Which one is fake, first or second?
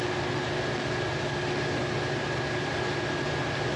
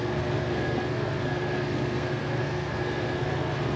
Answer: second